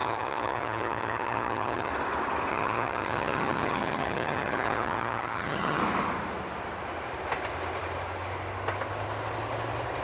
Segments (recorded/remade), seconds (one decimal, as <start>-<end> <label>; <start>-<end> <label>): 0.0-1.9 remade; 1.9-2.5 recorded; 2.5-5.8 remade; 5.8-10.0 recorded